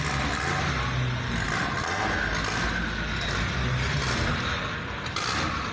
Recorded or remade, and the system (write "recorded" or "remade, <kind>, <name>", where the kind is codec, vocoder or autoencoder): recorded